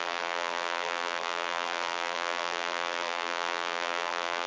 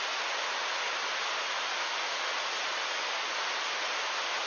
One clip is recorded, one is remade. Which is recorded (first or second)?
second